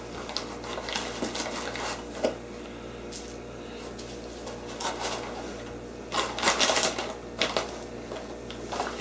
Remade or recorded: recorded